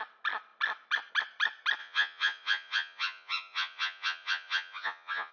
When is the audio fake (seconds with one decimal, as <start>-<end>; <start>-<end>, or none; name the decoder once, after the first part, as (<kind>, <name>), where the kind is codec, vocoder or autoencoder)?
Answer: 1.8-5.3 (vocoder, Vocos)